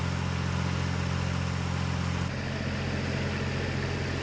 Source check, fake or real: real